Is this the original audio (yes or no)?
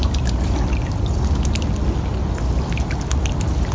yes